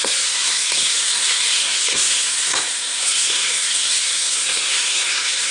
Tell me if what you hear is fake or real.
fake